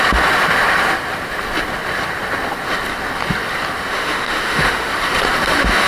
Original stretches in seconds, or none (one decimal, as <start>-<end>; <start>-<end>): 0.0-3.9; 4.9-5.9